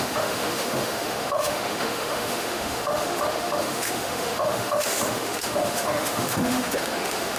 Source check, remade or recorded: remade